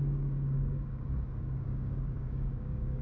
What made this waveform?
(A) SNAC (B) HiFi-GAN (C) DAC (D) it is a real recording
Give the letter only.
C